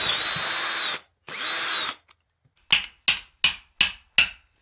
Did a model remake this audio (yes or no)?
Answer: no